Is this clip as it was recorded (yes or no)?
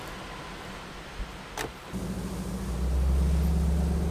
yes